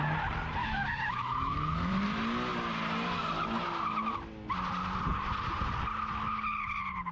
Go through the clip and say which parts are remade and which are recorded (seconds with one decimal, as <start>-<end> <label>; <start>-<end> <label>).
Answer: 0.0-0.6 recorded; 0.6-1.9 remade; 1.9-7.1 recorded